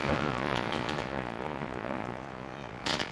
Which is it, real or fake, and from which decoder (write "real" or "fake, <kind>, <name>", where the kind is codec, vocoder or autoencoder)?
fake, vocoder, Vocos